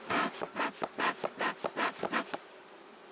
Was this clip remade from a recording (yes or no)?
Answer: no